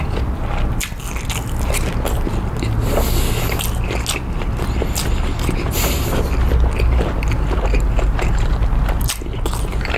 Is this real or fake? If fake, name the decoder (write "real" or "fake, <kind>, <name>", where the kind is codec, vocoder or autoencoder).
real